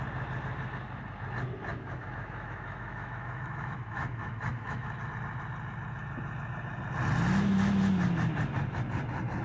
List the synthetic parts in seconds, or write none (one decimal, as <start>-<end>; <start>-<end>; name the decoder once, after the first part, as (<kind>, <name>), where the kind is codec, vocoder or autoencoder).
1.7-5.1 (autoencoder, DAC-VAE)